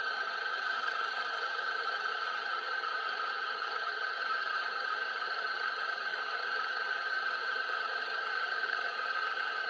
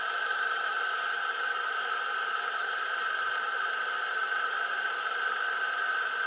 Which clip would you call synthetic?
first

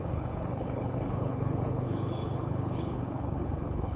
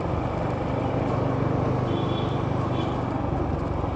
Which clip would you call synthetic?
first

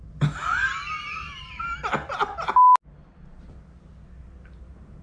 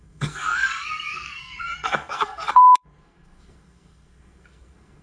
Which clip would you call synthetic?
second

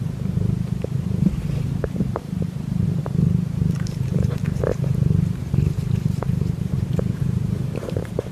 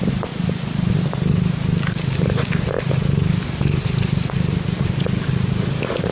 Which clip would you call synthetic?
first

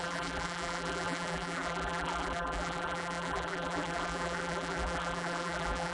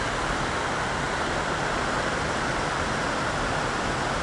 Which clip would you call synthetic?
first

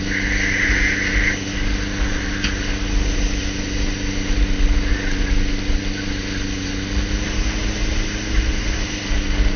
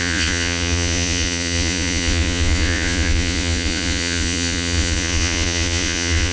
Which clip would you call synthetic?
second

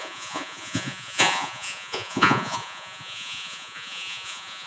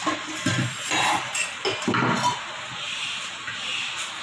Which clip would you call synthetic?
first